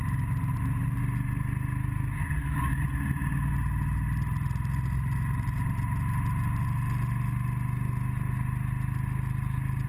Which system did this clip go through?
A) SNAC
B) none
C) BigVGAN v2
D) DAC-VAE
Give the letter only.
B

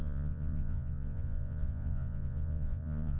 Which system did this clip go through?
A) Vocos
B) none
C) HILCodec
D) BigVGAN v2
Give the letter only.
A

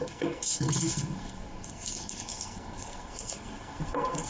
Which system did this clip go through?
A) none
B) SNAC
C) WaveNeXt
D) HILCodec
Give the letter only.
B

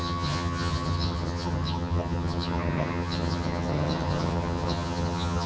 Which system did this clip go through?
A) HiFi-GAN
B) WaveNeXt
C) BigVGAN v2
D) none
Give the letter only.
A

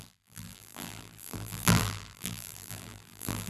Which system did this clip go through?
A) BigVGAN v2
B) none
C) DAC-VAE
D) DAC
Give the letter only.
A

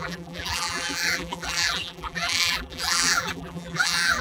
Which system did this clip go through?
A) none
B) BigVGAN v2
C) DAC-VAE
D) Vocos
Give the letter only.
B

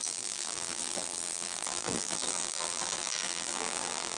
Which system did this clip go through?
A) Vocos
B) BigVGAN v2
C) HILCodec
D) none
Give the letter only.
B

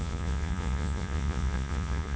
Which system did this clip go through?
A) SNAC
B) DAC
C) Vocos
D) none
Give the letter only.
C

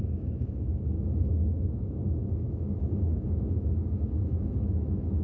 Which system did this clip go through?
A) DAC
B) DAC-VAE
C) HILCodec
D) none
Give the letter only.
B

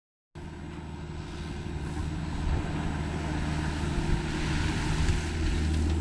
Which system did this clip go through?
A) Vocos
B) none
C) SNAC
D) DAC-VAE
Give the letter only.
B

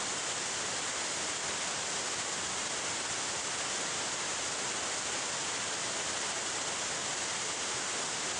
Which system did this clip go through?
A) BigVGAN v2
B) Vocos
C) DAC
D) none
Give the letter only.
D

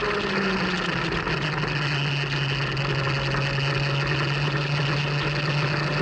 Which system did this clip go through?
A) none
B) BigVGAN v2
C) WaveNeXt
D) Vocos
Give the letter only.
A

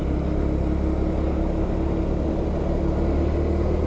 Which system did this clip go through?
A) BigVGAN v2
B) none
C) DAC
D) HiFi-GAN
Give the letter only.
B